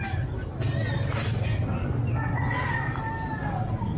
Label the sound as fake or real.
real